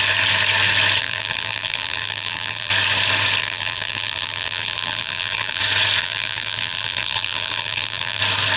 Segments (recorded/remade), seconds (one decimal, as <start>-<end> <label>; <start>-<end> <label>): 0.0-1.0 recorded; 1.0-2.7 remade; 2.7-3.4 recorded; 3.4-5.6 remade; 5.6-6.0 recorded; 6.0-8.2 remade; 8.2-8.6 recorded